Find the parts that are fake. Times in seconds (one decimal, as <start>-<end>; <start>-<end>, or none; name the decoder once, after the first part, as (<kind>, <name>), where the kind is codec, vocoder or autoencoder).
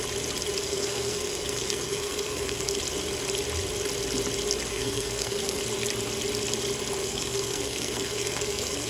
0.6-2.8 (codec, SNAC); 4.7-5.6; 7.0-8.9